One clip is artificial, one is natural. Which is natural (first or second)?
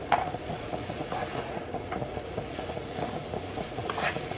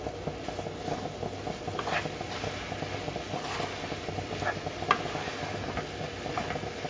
second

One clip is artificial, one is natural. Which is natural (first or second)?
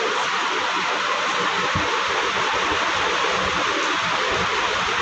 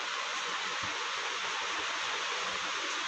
first